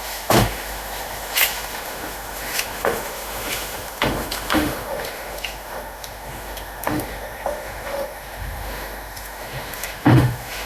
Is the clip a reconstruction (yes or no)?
yes